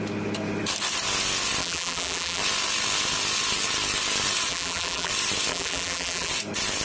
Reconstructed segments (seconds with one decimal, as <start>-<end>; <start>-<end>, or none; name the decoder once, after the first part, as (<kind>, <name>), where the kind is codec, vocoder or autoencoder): 1.6-2.4 (vocoder, BigVGAN v2); 4.5-5.1; 5.5-6.3